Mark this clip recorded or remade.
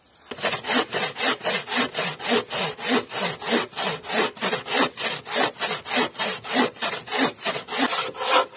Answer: recorded